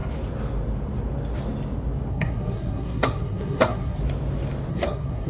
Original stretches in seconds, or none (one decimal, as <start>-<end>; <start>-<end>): 0.0-2.1; 4.0-4.7